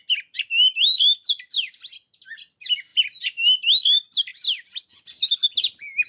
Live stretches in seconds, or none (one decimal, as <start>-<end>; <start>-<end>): 0.0-6.1